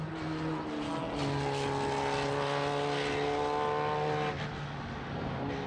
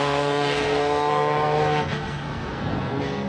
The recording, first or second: first